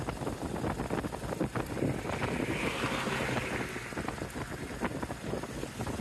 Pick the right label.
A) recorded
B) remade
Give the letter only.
A